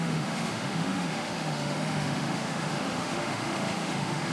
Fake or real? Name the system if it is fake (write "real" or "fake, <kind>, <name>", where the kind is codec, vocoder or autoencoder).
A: fake, autoencoder, DAC-VAE